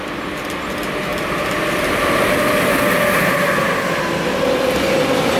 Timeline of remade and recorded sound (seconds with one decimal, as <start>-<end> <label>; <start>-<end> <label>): 0.0-5.4 recorded